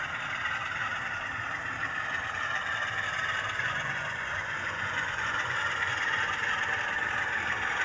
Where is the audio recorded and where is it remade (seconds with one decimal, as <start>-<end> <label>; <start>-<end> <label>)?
0.0-3.6 recorded; 3.6-6.5 remade; 6.5-7.8 recorded